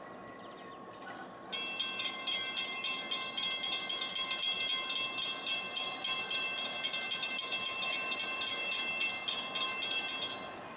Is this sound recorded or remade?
recorded